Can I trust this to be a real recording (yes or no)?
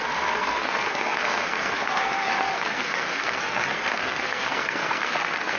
no